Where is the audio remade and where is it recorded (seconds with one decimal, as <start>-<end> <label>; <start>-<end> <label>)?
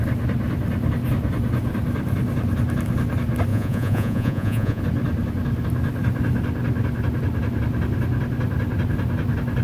0.0-3.5 recorded; 3.5-4.8 remade; 4.8-9.6 recorded